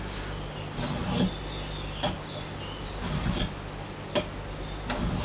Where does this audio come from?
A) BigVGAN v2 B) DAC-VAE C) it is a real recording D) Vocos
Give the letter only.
C